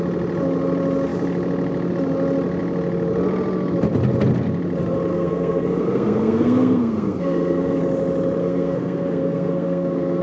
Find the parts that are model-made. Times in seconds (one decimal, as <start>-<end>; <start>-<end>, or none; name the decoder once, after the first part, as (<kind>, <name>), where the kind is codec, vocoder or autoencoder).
5.1-7.8 (codec, SNAC); 8.4-10.2